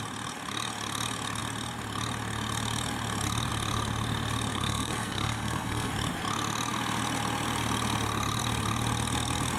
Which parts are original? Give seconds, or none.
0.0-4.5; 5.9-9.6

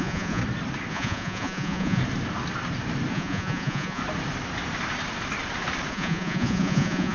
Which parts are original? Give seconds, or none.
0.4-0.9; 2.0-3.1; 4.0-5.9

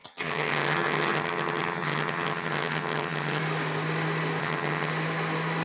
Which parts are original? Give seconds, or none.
3.4-4.4; 4.9-5.6